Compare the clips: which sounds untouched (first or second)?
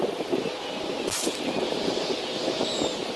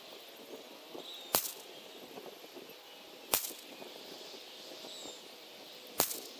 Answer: second